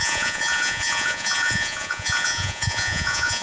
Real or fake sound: fake